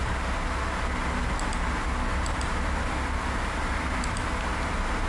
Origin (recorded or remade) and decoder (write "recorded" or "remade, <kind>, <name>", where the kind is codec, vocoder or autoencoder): recorded